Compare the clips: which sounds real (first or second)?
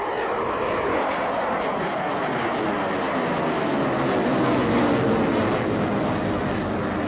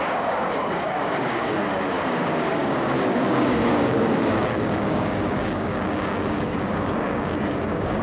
first